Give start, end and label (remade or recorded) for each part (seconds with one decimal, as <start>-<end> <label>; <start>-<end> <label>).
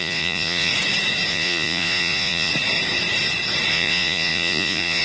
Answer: 0.0-0.7 remade; 0.7-1.3 recorded; 1.3-2.5 remade; 2.5-3.7 recorded; 3.7-5.0 remade